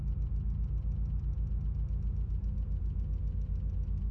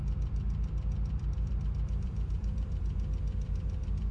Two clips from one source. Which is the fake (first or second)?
second